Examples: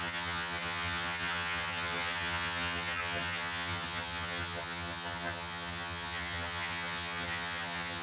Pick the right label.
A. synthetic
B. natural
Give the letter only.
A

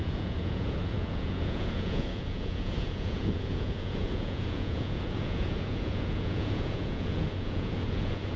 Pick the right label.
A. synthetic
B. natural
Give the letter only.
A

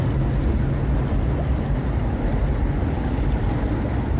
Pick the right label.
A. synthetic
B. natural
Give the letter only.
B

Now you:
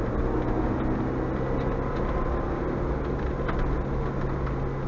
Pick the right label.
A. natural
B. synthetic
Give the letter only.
A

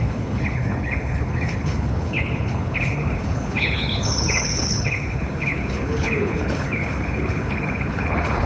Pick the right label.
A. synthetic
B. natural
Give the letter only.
A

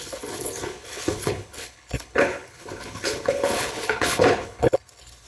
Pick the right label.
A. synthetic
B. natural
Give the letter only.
A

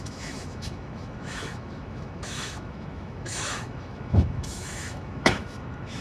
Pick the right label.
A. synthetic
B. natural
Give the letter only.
A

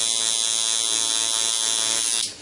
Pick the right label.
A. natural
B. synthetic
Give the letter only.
A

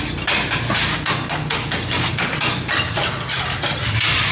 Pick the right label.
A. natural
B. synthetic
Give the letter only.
A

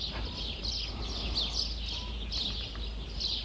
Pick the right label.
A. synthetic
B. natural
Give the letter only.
B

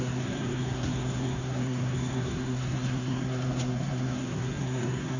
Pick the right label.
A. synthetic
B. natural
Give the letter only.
A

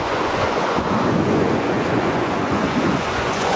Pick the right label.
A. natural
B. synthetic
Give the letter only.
B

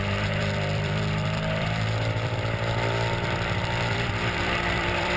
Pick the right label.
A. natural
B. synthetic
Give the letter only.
B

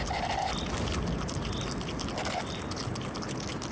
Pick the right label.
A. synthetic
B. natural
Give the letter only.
B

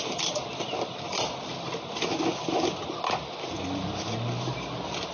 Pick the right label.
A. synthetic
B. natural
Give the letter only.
B